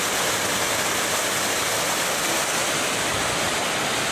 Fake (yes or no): no